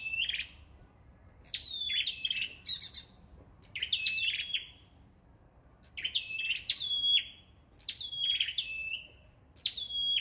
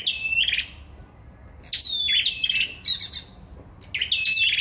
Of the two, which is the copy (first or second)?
first